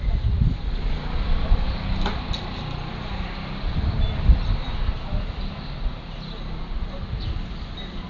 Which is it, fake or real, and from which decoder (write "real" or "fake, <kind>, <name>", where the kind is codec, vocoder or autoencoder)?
real